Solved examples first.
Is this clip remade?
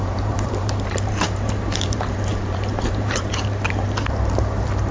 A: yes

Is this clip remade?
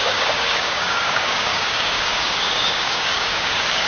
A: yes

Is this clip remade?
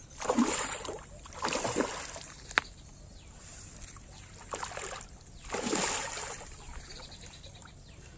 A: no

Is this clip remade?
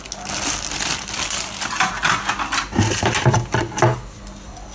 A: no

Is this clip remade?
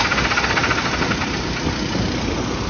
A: no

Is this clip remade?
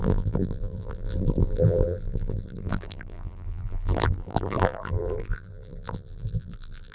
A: yes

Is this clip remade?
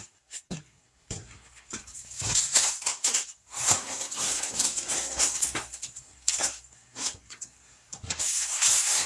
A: yes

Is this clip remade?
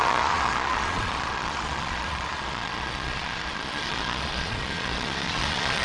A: yes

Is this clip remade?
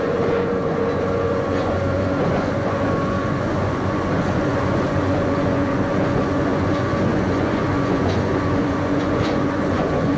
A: yes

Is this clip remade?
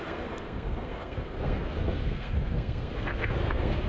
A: yes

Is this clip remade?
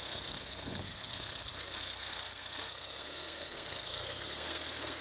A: yes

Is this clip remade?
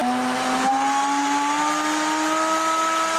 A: no